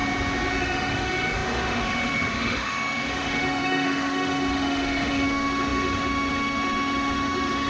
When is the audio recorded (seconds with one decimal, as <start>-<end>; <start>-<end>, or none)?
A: 0.0-0.6